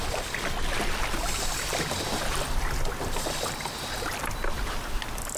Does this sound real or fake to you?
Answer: real